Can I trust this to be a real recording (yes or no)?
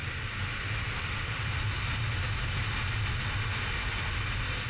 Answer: yes